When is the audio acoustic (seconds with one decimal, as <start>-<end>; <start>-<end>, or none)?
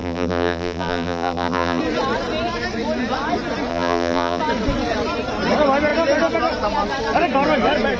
1.8-3.7; 4.4-8.0